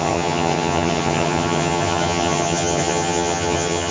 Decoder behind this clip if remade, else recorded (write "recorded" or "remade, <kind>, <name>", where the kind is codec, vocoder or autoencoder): remade, vocoder, HiFi-GAN